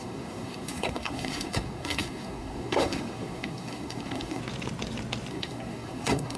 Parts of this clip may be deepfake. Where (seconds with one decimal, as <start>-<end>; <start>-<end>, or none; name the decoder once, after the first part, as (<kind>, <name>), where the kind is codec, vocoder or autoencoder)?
0.0-4.4 (codec, SNAC); 5.3-6.4